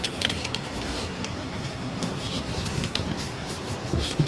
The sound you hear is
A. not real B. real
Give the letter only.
A